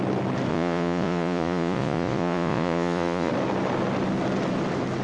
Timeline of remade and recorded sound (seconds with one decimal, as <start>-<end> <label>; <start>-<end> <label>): 0.0-0.5 recorded; 0.5-3.3 remade; 3.3-5.0 recorded